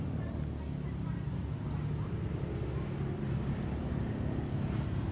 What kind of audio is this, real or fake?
real